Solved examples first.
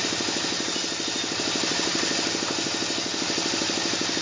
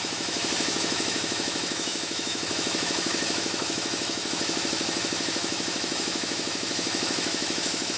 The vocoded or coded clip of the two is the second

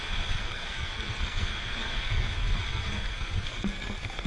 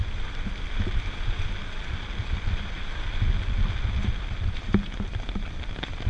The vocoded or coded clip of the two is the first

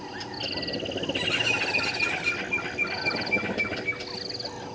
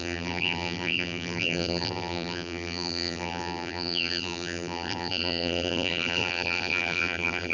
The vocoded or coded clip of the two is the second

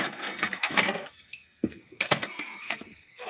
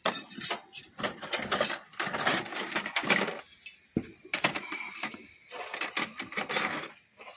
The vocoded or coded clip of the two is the first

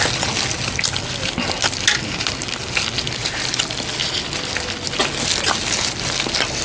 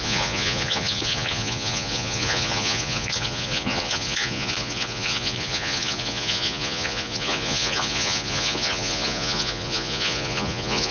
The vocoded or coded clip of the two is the second